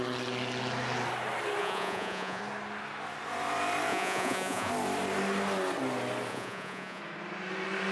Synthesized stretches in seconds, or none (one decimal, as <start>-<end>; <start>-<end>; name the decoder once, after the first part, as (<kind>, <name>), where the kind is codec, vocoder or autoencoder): 1.6-2.4 (vocoder, Vocos); 3.9-4.7; 6.3-7.0